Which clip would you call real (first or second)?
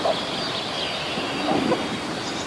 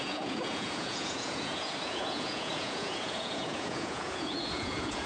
first